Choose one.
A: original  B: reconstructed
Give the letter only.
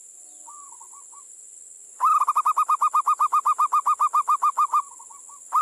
A